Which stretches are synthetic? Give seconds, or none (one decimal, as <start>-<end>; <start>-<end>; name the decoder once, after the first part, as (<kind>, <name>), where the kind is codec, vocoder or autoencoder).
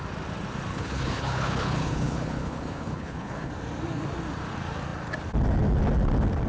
0.7-3.5 (codec, HILCodec)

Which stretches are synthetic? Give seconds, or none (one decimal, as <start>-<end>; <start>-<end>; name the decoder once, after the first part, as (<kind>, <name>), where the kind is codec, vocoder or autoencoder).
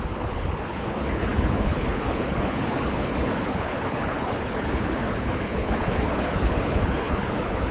0.0-7.7 (codec, HILCodec)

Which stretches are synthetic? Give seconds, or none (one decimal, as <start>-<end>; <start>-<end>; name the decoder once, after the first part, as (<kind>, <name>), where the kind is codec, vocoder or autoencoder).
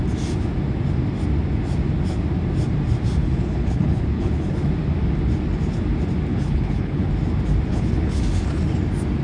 3.2-4.7 (codec, HILCodec); 6.3-7.1; 7.7-8.2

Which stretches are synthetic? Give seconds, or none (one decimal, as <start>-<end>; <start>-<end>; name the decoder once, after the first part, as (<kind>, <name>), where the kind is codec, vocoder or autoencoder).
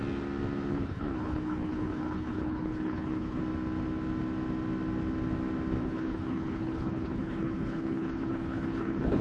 0.7-3.4 (codec, HILCodec); 5.8-9.2